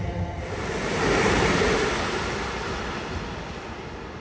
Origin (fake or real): real